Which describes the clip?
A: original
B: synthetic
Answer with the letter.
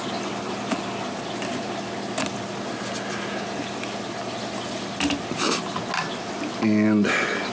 A